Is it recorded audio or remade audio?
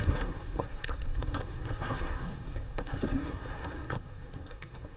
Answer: remade